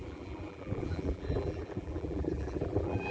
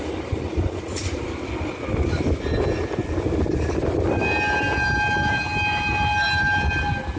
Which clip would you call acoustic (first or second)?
second